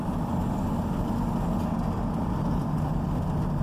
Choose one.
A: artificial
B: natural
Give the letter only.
B